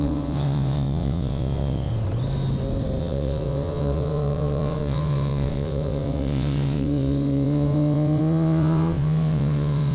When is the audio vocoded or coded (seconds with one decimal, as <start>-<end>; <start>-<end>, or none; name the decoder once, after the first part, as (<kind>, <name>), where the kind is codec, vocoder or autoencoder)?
0.0-1.9 (vocoder, WaveNeXt); 3.0-9.9